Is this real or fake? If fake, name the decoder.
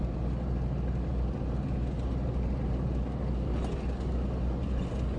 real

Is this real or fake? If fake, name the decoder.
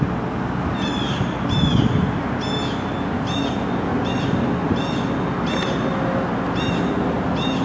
real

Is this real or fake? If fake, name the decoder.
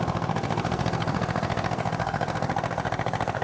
fake, codec, SNAC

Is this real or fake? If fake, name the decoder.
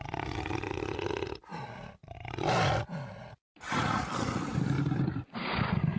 fake, vocoder, BigVGAN v2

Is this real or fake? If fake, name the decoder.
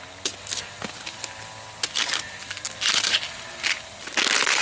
real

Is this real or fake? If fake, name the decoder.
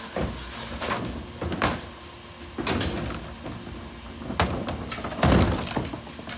real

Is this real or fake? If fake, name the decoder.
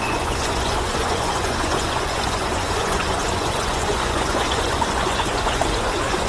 fake, vocoder, Vocos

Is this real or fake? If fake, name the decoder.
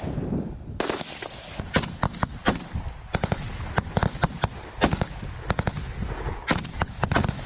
real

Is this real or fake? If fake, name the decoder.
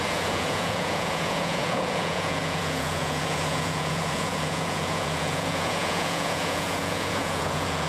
fake, vocoder, Vocos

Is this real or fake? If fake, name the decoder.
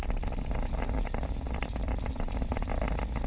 real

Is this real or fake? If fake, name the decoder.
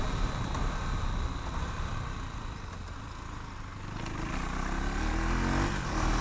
real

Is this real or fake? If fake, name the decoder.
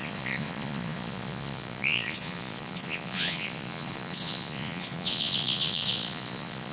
fake, vocoder, Vocos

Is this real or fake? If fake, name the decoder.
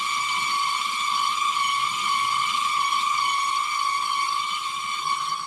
real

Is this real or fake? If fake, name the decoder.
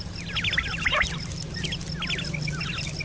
real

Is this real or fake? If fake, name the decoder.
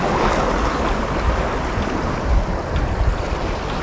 real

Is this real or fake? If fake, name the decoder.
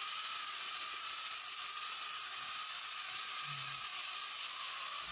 real